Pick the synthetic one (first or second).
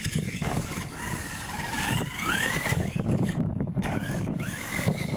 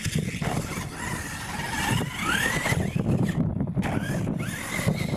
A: first